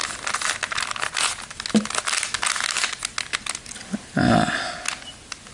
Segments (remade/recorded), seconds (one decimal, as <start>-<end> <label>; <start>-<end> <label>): 0.0-5.5 recorded

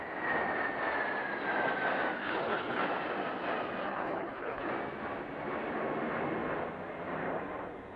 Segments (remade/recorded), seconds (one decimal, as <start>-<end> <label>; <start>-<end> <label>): 0.0-2.2 recorded; 2.2-2.8 remade; 2.8-3.8 recorded; 3.8-4.7 remade; 4.7-8.0 recorded

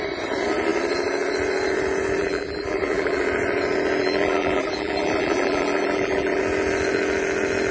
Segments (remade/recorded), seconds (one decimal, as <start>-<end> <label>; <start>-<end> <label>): 0.0-2.2 recorded; 2.2-3.2 remade; 3.2-4.0 recorded; 4.0-6.4 remade; 6.4-7.7 recorded